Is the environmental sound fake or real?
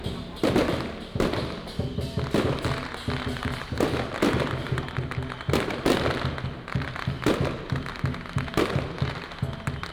real